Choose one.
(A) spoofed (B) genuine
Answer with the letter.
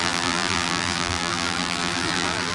A